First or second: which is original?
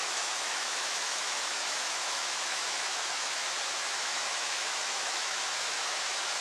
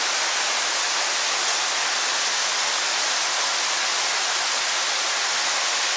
second